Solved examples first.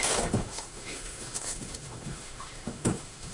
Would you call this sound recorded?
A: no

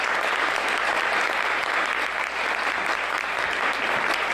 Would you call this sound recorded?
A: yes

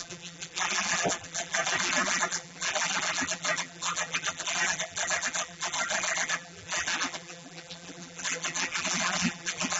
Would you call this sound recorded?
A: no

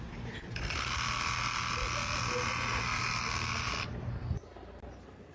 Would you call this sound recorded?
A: yes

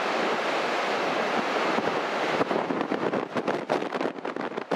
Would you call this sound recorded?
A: yes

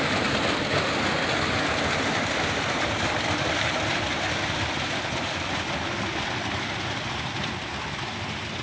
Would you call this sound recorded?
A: no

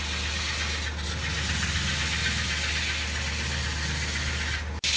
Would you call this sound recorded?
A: yes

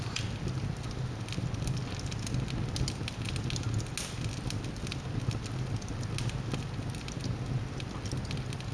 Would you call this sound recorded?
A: yes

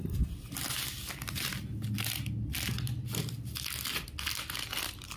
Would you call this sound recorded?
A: yes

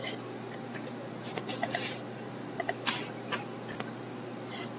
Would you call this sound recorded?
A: yes